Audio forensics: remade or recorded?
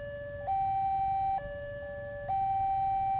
recorded